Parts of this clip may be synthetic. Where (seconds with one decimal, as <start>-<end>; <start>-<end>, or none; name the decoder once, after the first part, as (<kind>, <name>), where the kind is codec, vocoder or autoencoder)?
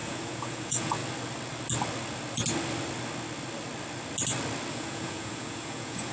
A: 0.0-1.0 (vocoder, Vocos); 4.7-6.1